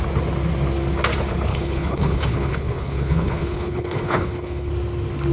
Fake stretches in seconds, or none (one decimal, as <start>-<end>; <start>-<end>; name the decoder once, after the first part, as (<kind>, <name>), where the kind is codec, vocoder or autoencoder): 1.5-4.7 (codec, HILCodec)